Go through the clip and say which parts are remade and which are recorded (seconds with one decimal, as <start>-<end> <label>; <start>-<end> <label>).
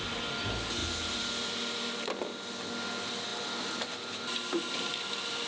0.0-5.5 recorded